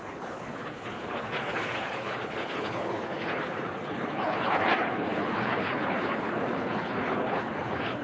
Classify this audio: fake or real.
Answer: fake